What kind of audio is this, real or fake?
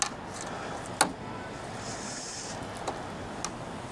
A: real